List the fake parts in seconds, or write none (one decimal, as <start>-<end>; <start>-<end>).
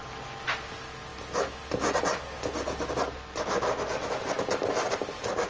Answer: none